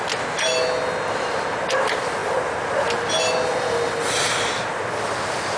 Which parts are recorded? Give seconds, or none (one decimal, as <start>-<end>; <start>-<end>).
0.0-5.6